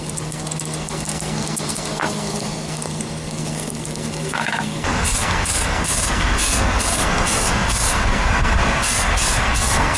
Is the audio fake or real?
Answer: fake